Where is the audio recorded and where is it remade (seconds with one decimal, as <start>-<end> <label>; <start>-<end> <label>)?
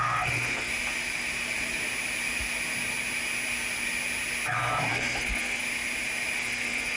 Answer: 0.0-0.7 remade; 0.7-4.9 recorded; 4.9-5.6 remade; 5.6-6.4 recorded; 6.4-7.0 remade